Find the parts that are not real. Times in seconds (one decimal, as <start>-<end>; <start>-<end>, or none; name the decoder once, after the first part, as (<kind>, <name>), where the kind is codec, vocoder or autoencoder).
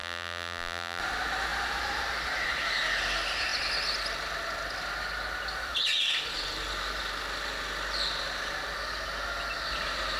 0.0-1.0 (vocoder, BigVGAN v2)